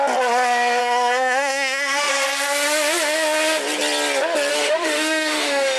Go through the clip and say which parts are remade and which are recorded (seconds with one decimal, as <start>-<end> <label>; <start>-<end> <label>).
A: 0.0-0.8 recorded; 0.8-2.1 remade; 2.1-4.5 recorded; 4.5-5.8 remade